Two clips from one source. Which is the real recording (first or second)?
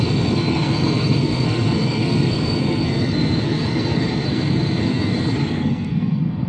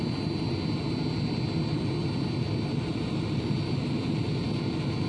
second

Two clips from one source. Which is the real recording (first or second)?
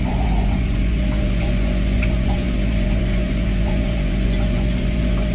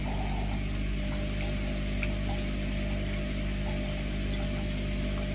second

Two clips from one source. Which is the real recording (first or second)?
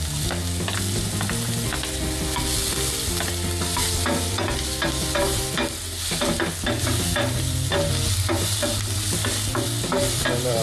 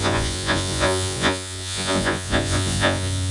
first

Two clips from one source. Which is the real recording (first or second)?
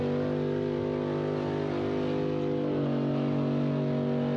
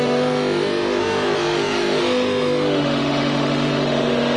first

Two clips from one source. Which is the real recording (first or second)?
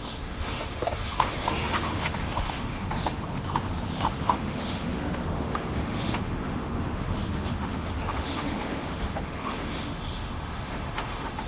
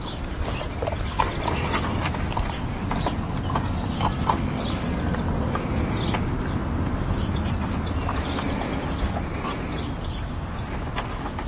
second